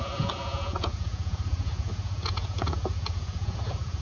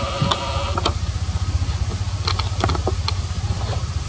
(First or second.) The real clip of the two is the second